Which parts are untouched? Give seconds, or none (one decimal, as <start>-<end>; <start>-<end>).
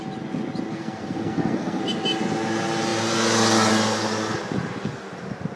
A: 0.0-0.7; 1.8-5.6